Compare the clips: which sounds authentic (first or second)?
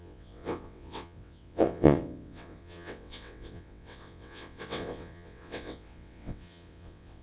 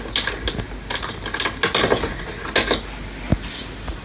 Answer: second